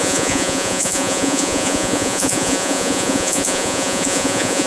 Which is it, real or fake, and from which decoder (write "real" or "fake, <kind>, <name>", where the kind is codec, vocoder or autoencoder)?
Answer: fake, vocoder, Vocos